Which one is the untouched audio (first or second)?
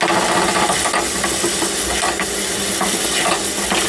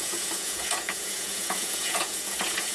first